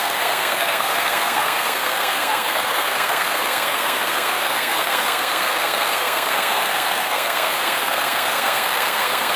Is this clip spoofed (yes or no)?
yes